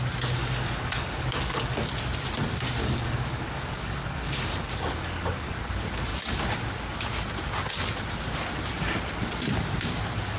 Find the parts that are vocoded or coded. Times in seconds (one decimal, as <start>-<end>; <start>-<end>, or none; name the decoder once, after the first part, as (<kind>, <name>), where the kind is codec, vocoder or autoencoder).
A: 0.4-1.9 (codec, DAC); 2.8-5.5